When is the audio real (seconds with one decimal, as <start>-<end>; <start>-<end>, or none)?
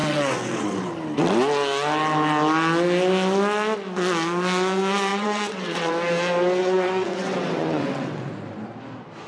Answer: 0.9-5.1; 5.9-6.6; 8.3-9.3